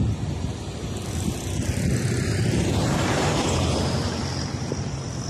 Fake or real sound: fake